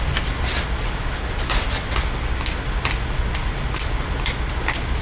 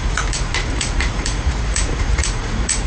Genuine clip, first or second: first